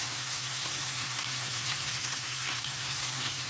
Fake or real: fake